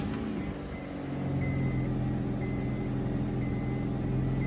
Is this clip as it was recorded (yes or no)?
yes